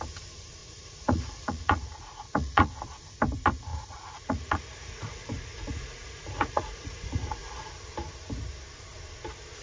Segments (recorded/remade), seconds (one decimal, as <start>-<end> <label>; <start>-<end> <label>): 0.0-0.6 recorded; 0.6-2.7 remade; 2.7-3.7 recorded; 3.7-7.7 remade; 7.7-9.6 recorded

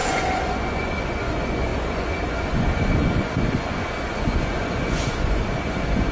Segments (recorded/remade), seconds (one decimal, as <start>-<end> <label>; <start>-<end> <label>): 0.0-6.1 remade

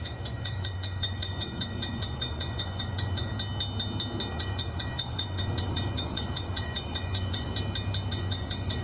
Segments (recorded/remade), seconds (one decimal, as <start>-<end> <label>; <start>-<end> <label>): 0.0-3.3 remade; 3.3-4.3 recorded; 4.3-7.5 remade; 7.5-8.1 recorded; 8.1-8.8 remade